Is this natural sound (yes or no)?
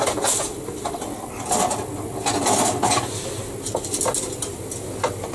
yes